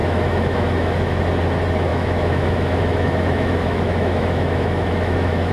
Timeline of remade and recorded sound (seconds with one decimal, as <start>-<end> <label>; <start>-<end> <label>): 0.0-1.2 remade; 1.2-1.9 recorded; 1.9-5.5 remade